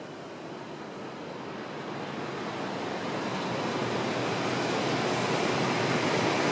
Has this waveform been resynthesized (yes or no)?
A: no